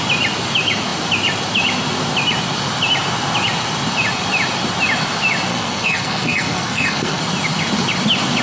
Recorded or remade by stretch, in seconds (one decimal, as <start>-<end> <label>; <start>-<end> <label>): 0.0-5.5 recorded; 5.5-7.2 remade; 7.2-8.4 recorded